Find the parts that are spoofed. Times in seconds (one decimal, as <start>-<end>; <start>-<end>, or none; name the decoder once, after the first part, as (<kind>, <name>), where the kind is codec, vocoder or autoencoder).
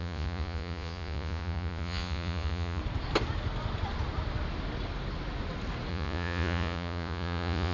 0.0-2.8 (vocoder, Vocos); 5.9-7.7